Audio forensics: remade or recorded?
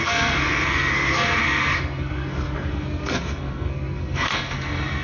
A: remade